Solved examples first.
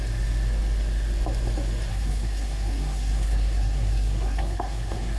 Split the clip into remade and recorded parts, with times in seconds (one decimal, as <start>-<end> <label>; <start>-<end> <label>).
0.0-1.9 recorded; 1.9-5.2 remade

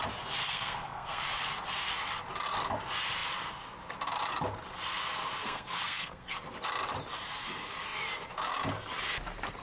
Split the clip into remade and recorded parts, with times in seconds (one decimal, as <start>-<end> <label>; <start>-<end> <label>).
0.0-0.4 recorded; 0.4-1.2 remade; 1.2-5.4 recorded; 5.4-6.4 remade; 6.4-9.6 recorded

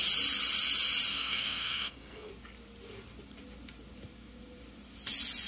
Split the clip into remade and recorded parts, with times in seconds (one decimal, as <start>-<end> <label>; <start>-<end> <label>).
0.0-1.1 recorded; 1.1-2.3 remade; 2.3-5.5 recorded

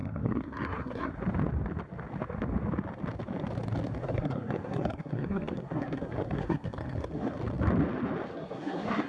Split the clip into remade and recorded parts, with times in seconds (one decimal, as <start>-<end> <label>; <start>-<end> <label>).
0.0-1.1 remade; 1.1-4.0 recorded; 4.0-7.4 remade; 7.4-8.3 recorded; 8.3-9.1 remade

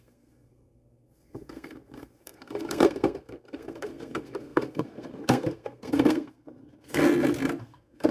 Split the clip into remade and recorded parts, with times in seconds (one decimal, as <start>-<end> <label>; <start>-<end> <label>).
0.0-7.0 remade; 7.0-7.6 recorded; 7.6-8.1 remade